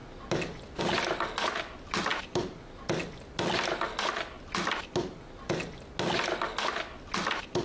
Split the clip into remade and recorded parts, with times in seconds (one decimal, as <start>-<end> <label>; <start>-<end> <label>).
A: 0.0-7.6 recorded